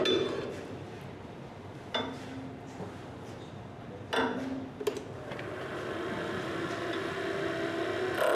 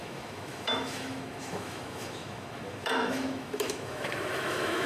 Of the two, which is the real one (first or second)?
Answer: first